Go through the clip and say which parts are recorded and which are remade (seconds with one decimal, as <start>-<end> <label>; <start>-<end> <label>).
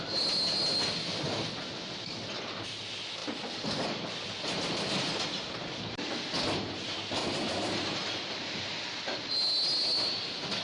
0.0-3.2 recorded; 3.2-4.9 remade; 4.9-7.2 recorded; 7.2-9.3 remade; 9.3-10.6 recorded